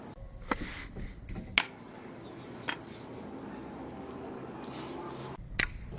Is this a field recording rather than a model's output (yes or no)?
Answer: yes